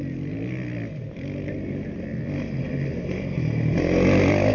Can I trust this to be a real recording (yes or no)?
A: yes